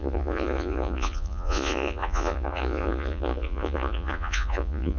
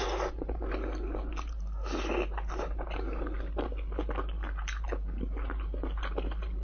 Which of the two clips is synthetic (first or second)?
first